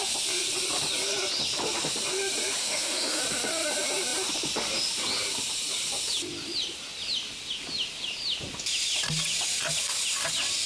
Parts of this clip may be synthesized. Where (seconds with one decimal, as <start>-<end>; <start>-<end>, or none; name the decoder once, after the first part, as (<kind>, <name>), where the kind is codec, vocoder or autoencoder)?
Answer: 2.6-3.2 (autoencoder, DAC-VAE)